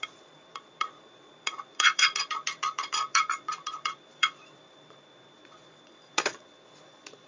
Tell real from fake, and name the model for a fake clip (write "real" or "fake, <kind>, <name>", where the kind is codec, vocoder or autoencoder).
fake, vocoder, Vocos